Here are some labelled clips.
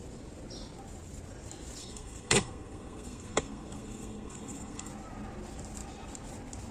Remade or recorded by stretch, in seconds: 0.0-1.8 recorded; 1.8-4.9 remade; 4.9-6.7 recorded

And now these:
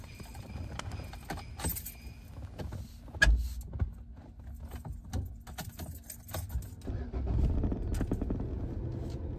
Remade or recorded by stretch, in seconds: 0.0-9.4 recorded

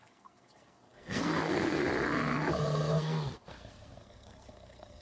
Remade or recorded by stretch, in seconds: 0.0-1.8 remade; 1.8-2.6 recorded; 2.6-5.0 remade

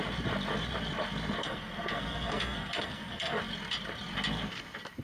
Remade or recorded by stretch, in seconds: 0.0-1.4 recorded; 1.4-3.4 remade; 3.4-5.0 recorded

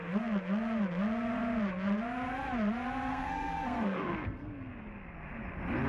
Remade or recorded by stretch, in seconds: 0.0-3.1 recorded; 3.1-4.7 remade; 4.7-5.9 recorded

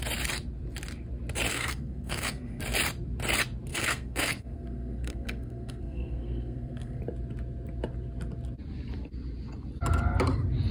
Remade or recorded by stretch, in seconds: 0.0-1.5 recorded; 1.5-2.6 remade; 2.6-3.7 recorded; 3.7-7.0 remade; 7.0-10.7 recorded

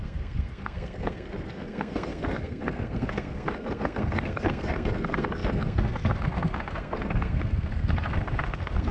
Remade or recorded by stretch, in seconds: 0.0-8.9 remade